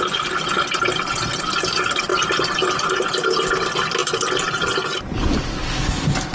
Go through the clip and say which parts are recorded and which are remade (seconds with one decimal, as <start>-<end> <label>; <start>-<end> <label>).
0.0-6.3 recorded

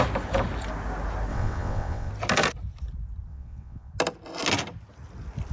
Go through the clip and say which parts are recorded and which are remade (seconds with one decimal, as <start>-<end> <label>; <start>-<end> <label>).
0.0-1.3 recorded; 1.3-2.1 remade; 2.1-3.3 recorded; 3.3-3.9 remade; 3.9-5.5 recorded

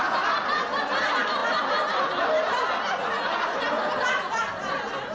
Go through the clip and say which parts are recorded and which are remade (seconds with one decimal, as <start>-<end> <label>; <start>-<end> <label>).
0.0-5.1 recorded

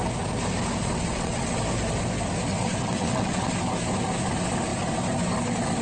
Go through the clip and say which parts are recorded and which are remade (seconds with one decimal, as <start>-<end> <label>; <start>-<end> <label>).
0.0-0.8 recorded; 0.8-1.6 remade; 1.6-2.5 recorded; 2.5-3.5 remade; 3.5-5.8 recorded

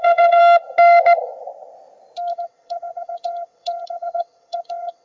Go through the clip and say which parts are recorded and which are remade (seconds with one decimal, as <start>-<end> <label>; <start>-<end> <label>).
0.0-0.4 remade; 0.4-2.3 recorded; 2.3-5.0 remade